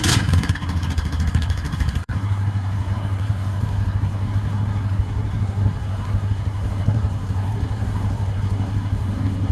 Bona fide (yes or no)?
no